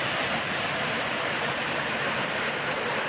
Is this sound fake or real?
fake